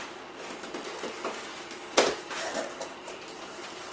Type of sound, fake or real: real